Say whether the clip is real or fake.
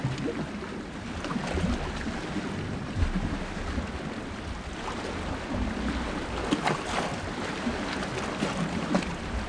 real